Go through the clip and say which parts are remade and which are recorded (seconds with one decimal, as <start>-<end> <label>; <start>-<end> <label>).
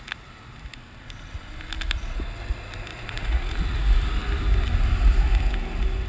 0.0-2.9 recorded; 2.9-3.8 remade; 3.8-6.1 recorded